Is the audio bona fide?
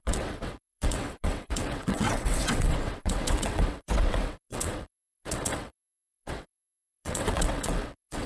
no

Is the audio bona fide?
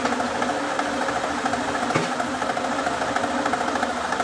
yes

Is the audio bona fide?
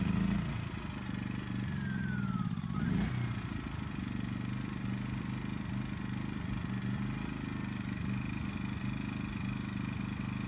yes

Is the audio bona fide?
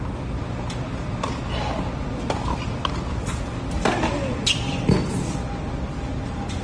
yes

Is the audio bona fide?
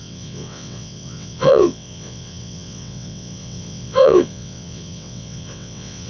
no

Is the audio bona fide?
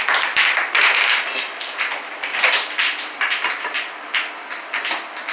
yes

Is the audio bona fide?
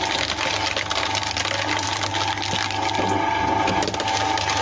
yes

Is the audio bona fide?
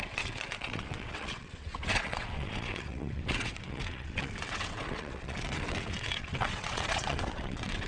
no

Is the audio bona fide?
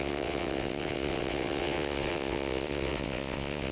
no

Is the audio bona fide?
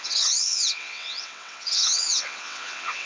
no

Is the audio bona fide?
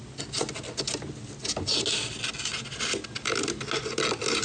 yes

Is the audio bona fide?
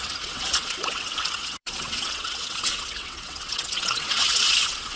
no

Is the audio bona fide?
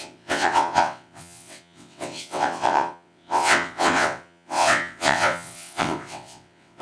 no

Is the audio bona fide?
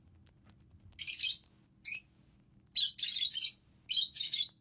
yes